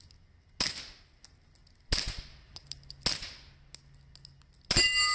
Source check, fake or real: real